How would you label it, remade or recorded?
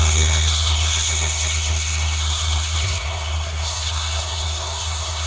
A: remade